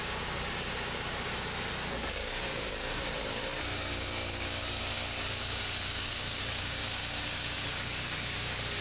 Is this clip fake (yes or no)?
yes